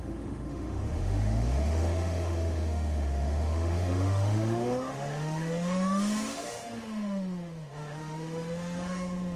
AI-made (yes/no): yes